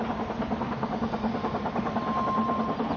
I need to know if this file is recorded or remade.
recorded